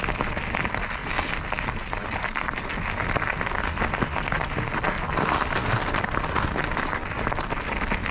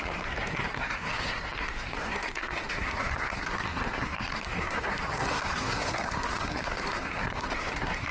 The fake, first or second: second